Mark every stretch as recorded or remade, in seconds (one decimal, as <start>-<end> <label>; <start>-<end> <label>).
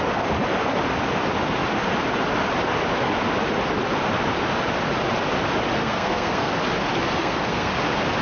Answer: 0.0-5.8 recorded; 5.8-6.5 remade; 6.5-7.2 recorded; 7.2-7.7 remade; 7.7-8.2 recorded